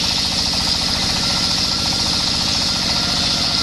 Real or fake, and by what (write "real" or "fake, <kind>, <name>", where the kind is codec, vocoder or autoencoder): fake, vocoder, Vocos